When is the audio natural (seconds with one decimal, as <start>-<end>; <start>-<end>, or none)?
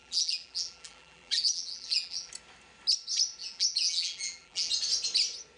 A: 2.3-3.4; 4.7-5.6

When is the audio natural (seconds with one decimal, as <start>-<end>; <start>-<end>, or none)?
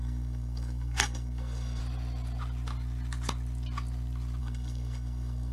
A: 1.8-4.4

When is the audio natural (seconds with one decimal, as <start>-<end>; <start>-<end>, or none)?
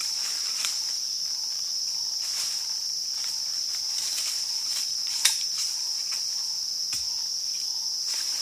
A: 6.8-7.4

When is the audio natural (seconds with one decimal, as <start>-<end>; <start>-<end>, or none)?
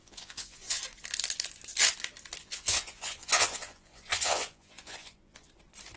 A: 0.8-2.4; 5.5-6.0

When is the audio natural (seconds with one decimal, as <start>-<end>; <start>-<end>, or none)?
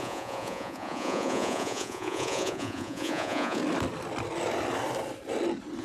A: 3.6-5.8